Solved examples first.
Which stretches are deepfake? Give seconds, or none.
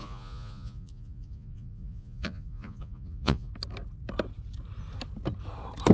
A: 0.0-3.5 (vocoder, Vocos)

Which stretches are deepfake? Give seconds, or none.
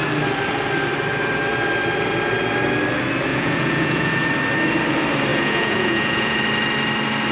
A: 3.3-4.3 (vocoder, Vocos); 5.3-6.4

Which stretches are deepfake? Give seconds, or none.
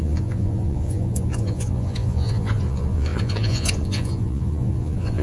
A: 0.0-5.2 (vocoder, Vocos)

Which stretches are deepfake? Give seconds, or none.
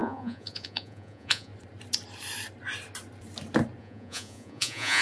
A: 0.0-1.5 (vocoder, Vocos); 3.8-5.0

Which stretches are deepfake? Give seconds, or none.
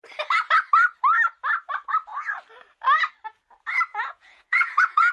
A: 3.9-5.1 (vocoder, Vocos)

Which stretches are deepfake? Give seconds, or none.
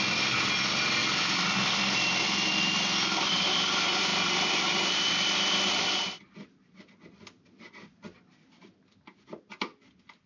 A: none